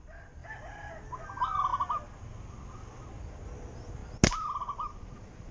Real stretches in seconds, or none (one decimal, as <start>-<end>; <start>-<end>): 0.0-5.5